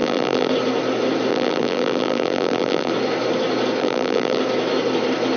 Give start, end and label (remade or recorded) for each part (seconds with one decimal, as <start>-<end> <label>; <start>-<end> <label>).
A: 0.0-0.5 remade; 0.5-1.3 recorded; 1.3-2.9 remade; 2.9-3.8 recorded; 3.8-4.4 remade; 4.4-5.4 recorded